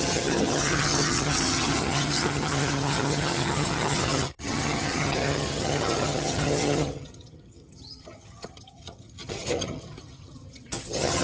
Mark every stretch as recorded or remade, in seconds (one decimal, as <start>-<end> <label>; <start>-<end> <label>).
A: 0.0-11.2 remade